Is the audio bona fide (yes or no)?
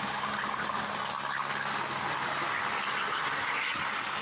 yes